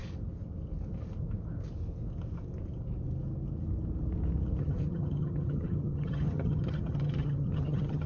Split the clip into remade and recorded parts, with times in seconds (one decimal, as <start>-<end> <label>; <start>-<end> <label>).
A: 0.0-4.6 recorded; 4.6-8.1 remade